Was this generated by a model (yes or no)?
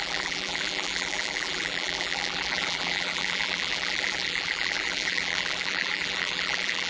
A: yes